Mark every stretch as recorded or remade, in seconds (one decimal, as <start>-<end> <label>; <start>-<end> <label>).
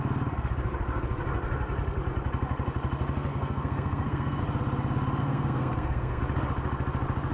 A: 0.0-3.3 recorded; 3.3-4.4 remade; 4.4-5.2 recorded; 5.2-6.2 remade; 6.2-7.3 recorded